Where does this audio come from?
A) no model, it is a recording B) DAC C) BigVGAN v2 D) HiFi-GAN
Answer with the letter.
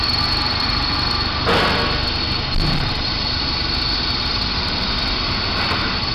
A